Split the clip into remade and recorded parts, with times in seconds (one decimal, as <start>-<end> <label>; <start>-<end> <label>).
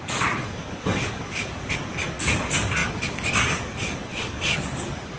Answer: 0.0-5.2 remade